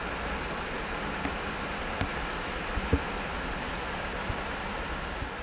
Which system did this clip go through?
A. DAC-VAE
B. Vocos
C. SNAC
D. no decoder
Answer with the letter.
D